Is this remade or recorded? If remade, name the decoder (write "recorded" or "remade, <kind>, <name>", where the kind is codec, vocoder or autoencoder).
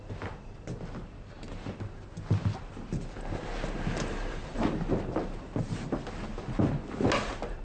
recorded